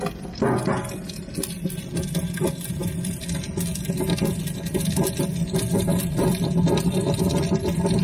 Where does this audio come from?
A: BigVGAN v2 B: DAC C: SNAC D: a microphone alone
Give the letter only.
D